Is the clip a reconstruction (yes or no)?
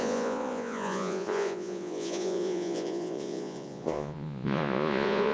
yes